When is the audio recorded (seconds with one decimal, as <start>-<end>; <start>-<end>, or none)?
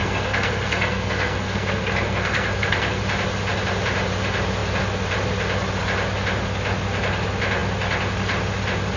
3.0-9.0